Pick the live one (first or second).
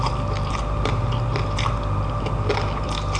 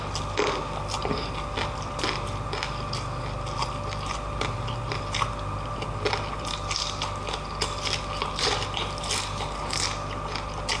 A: second